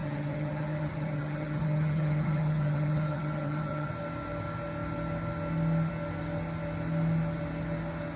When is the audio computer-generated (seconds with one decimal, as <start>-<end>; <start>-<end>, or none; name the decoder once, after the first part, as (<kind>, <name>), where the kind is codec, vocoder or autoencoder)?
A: 0.0-3.9 (vocoder, HiFi-GAN)